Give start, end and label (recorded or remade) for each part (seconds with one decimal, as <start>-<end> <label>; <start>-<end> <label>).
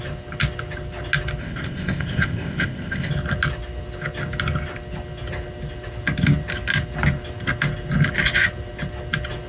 0.0-1.4 recorded; 1.4-3.1 remade; 3.1-9.5 recorded